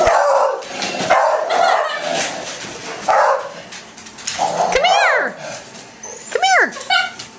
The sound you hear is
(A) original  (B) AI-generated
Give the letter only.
A